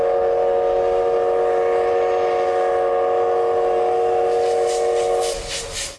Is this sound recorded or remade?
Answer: recorded